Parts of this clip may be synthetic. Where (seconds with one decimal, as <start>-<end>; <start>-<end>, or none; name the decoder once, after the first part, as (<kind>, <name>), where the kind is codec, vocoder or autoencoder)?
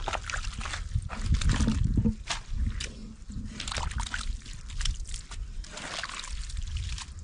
3.0-3.7 (vocoder, BigVGAN v2)